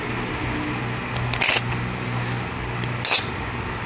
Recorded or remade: recorded